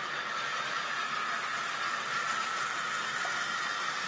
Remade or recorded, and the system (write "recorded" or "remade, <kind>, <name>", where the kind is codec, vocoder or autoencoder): recorded